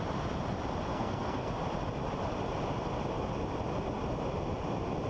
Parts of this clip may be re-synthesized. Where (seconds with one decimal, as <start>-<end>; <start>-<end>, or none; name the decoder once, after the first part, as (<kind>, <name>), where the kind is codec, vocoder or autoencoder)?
0.9-1.5 (codec, SNAC)